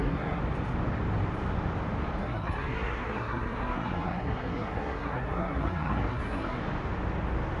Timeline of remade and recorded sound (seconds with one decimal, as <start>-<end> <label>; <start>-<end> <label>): 0.0-0.4 remade; 0.4-2.2 recorded; 2.2-6.6 remade; 6.6-7.6 recorded